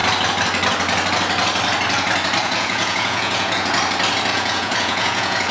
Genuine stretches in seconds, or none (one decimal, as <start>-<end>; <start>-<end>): 0.0-2.4; 3.7-4.3